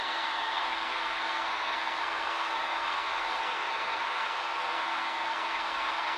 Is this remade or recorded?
remade